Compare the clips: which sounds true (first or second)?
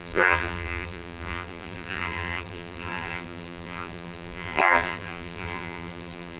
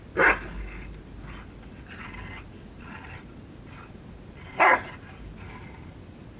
second